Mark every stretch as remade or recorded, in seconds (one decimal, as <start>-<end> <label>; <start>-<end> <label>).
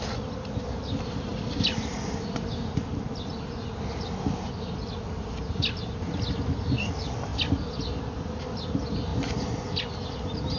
0.0-10.6 recorded